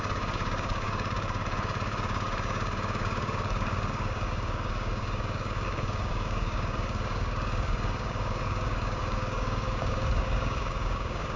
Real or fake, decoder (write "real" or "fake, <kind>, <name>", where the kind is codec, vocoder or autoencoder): fake, codec, DAC